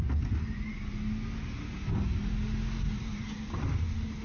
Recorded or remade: recorded